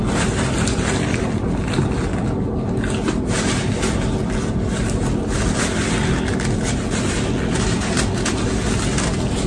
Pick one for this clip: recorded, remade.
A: recorded